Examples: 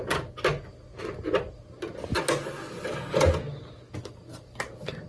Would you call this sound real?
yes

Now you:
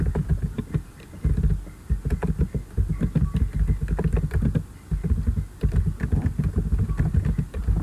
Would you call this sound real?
yes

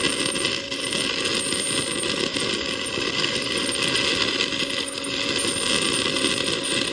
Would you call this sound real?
yes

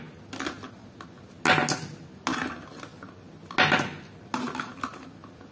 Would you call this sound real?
yes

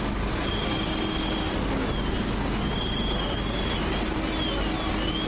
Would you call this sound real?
yes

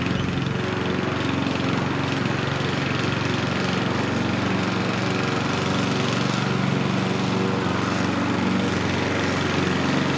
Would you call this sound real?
yes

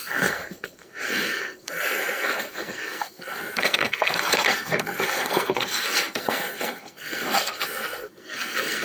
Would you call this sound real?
no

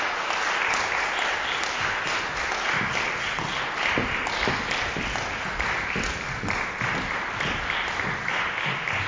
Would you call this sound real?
yes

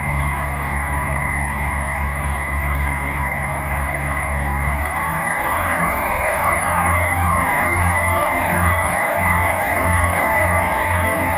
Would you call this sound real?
no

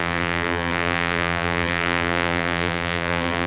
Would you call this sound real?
no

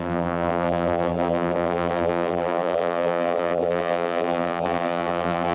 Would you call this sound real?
no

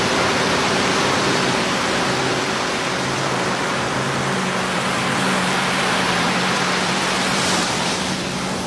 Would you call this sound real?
no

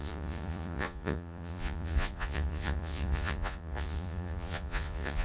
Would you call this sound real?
no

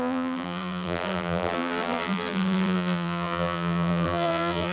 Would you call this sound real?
no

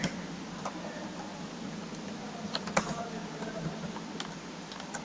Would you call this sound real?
yes